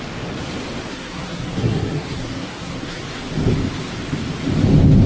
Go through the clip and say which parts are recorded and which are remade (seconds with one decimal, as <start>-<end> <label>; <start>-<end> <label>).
0.0-0.9 recorded; 0.9-3.0 remade; 3.0-5.1 recorded